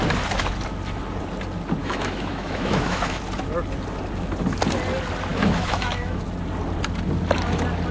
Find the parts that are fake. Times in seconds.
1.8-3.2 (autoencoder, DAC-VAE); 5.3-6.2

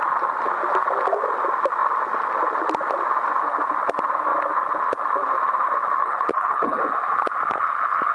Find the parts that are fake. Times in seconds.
6.0-6.8 (codec, HILCodec)

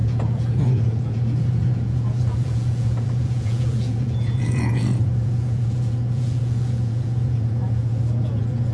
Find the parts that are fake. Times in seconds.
0.0-8.7 (vocoder, Vocos)

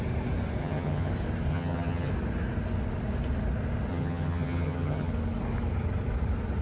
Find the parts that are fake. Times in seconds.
0.6-1.1 (vocoder, HiFi-GAN); 1.5-2.1; 3.9-5.1

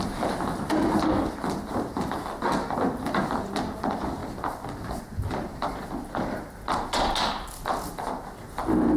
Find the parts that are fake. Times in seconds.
none

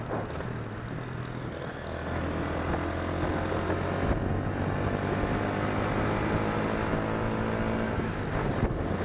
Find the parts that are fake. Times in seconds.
none

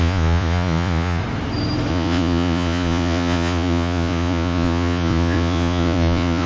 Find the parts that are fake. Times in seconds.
0.0-1.2 (vocoder, Vocos); 1.9-6.5

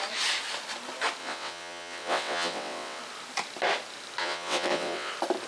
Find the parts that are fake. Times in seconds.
1.2-3.0 (vocoder, WaveNeXt); 4.2-5.1